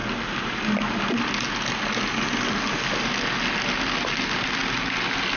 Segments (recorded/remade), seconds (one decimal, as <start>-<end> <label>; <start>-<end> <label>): 0.0-5.4 recorded